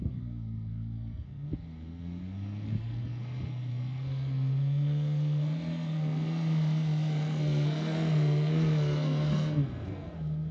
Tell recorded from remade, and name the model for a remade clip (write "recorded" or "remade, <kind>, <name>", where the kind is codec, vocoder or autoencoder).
remade, codec, SNAC